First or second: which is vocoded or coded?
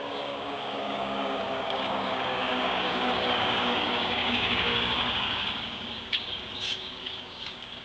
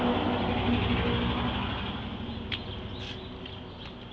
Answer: first